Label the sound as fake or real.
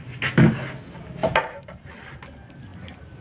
real